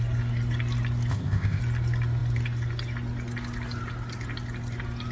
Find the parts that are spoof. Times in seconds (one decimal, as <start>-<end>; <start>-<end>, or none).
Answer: 1.1-1.6